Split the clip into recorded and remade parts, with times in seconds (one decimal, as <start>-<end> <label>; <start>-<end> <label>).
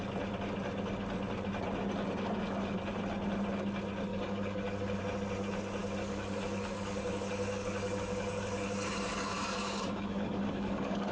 0.0-4.1 recorded; 4.1-5.0 remade; 5.0-5.8 recorded; 5.8-11.1 remade